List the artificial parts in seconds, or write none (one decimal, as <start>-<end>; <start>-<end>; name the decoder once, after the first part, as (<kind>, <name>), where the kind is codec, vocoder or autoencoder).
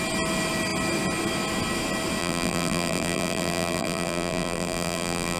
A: 2.2-5.4 (vocoder, BigVGAN v2)